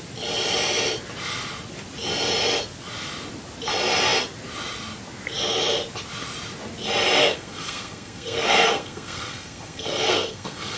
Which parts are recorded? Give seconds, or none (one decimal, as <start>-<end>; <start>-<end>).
0.0-7.2

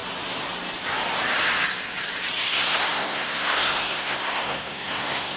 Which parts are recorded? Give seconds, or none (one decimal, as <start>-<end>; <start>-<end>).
0.0-2.4

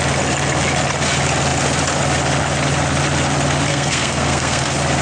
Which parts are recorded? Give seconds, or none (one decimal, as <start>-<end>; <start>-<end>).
0.0-3.7; 4.6-5.0

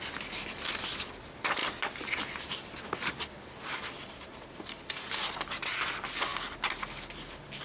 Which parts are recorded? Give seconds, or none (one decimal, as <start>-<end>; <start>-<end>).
0.0-7.6

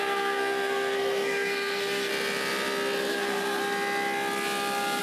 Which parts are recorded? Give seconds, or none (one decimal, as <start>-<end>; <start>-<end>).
2.1-3.1; 3.6-5.0

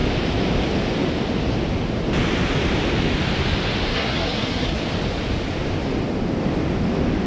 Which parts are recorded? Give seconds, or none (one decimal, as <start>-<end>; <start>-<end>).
0.0-3.9; 4.8-7.3